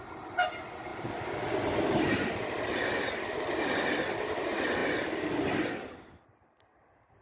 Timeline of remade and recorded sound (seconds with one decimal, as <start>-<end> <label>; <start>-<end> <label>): 0.0-7.2 recorded